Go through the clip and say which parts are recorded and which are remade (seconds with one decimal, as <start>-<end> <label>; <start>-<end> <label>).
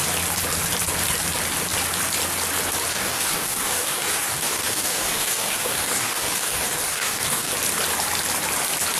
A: 0.0-2.9 recorded; 2.9-7.5 remade; 7.5-9.0 recorded